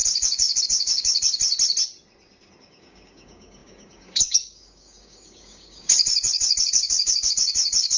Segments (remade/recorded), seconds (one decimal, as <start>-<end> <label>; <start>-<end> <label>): 0.0-1.4 remade; 1.4-2.6 recorded; 2.6-8.0 remade